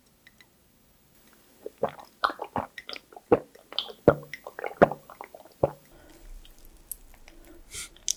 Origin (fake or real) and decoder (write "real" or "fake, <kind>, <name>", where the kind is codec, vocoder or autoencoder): real